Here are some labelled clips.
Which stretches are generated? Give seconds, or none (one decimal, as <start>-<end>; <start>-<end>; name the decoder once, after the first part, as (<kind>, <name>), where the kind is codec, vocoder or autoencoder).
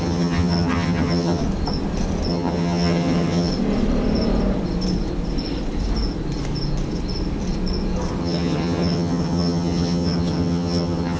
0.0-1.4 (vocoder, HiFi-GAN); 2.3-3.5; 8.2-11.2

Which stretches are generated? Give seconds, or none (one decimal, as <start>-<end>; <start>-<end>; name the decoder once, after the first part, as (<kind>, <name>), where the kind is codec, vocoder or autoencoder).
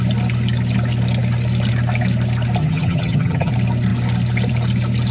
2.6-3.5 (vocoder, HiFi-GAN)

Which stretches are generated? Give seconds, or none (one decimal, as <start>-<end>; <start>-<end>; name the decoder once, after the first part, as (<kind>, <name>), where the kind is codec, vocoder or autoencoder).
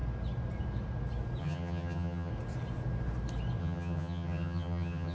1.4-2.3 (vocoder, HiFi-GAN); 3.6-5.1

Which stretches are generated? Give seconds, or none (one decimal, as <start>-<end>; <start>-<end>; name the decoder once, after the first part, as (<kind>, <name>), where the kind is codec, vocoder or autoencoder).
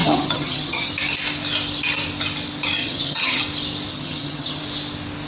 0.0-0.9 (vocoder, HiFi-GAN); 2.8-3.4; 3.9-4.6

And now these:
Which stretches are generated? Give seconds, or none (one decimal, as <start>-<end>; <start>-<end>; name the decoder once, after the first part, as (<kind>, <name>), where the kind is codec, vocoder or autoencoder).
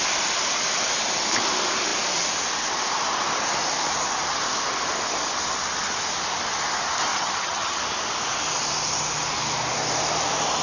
7.1-7.8 (vocoder, HiFi-GAN)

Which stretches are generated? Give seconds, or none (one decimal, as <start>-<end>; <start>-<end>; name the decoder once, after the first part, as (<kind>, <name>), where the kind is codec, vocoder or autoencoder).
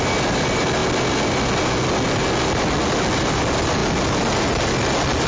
none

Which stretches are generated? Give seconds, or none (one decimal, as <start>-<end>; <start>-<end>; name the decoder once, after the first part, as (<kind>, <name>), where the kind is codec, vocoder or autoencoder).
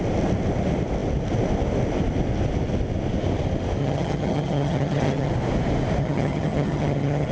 3.8-5.3 (vocoder, HiFi-GAN); 6.0-7.3